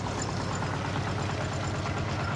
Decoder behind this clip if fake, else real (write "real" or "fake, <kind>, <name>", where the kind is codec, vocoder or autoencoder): real